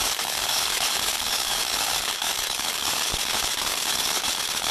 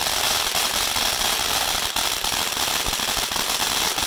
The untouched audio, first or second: second